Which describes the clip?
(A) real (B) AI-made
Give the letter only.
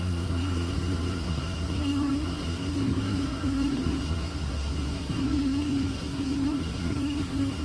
B